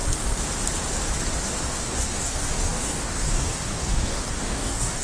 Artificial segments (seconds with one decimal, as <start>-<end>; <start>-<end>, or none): 1.8-5.0